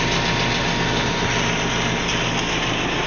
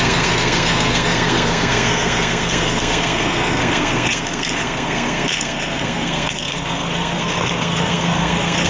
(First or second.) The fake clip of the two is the second